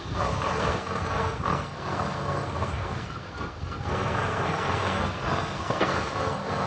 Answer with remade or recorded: remade